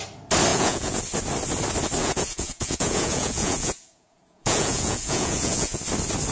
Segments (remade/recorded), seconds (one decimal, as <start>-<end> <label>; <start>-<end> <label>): 0.0-0.5 recorded; 0.5-1.0 remade; 1.0-2.0 recorded; 2.0-5.8 remade; 5.8-6.3 recorded